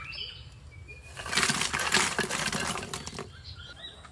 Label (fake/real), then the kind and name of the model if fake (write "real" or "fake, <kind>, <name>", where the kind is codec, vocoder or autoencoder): real